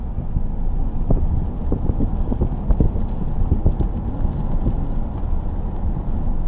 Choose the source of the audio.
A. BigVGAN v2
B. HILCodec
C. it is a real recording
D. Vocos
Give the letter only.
C